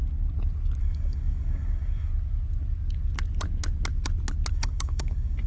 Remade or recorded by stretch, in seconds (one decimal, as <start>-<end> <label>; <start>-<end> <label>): 0.0-0.8 recorded; 0.8-2.1 remade; 2.1-4.5 recorded; 4.5-5.5 remade